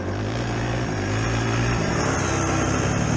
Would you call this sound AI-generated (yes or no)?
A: no